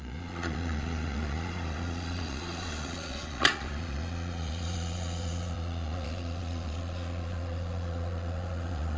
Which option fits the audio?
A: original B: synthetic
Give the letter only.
B